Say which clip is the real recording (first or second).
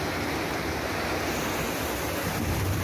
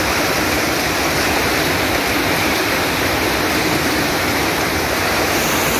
first